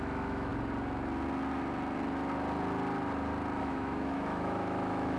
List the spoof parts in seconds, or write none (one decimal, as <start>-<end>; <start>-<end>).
0.0-0.5; 3.6-5.2